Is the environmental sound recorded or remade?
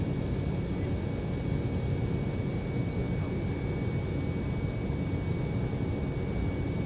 recorded